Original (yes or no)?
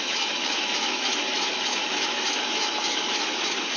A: no